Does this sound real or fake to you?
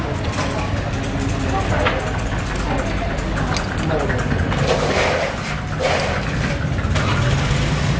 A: real